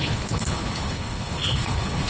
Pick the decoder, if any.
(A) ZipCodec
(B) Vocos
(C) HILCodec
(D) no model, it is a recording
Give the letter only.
C